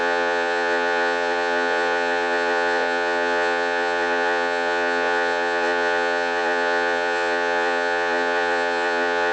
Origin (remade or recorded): remade